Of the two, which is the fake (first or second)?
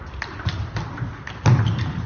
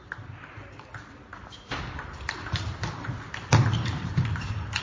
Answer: second